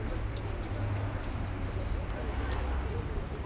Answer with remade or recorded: recorded